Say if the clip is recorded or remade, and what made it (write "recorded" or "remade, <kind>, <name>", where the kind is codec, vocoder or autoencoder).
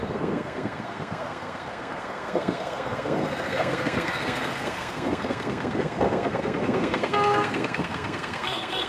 remade, codec, SNAC